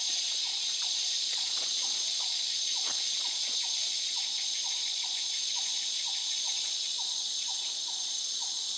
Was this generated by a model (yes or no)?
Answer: yes